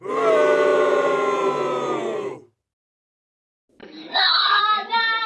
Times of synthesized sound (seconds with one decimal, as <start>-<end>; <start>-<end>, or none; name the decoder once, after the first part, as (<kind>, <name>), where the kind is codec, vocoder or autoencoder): 4.1-4.6 (codec, SNAC)